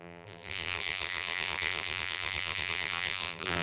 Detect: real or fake fake